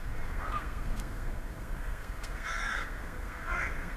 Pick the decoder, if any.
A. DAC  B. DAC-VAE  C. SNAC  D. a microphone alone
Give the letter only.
C